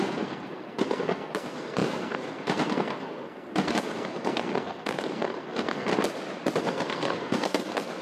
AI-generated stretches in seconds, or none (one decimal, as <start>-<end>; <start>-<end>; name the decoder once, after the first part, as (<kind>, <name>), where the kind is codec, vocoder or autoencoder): 0.0-5.9 (codec, SNAC); 6.6-8.0